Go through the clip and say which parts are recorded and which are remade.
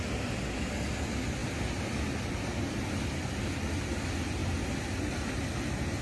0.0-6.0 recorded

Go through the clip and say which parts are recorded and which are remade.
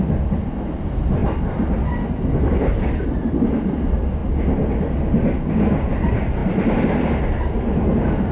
0.0-6.4 recorded; 6.4-7.2 remade; 7.2-8.3 recorded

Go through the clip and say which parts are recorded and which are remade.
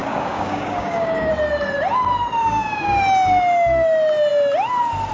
0.0-1.3 remade; 1.3-2.4 recorded; 2.4-3.0 remade; 3.0-5.1 recorded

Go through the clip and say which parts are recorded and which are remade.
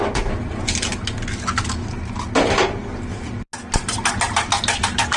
0.0-5.2 recorded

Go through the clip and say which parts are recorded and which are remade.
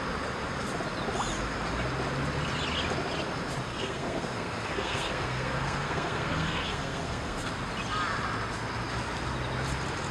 0.0-3.7 recorded; 3.7-7.5 remade; 7.5-10.1 recorded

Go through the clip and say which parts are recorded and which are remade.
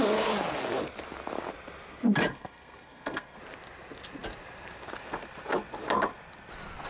0.0-2.3 recorded; 2.3-3.4 remade; 3.4-6.9 recorded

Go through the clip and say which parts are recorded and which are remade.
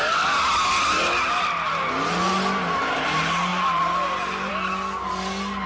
0.0-5.7 recorded